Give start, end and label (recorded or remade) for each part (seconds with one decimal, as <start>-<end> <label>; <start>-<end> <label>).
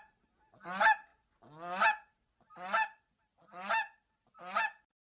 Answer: 0.0-5.0 recorded